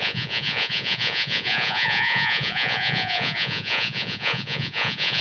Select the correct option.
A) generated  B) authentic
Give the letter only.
A